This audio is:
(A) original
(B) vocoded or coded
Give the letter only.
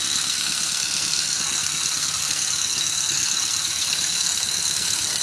B